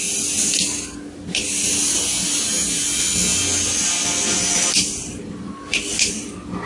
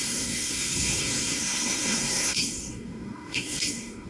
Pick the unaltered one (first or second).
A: first